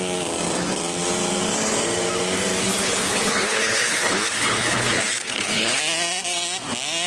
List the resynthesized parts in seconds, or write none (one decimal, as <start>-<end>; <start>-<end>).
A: 2.6-5.8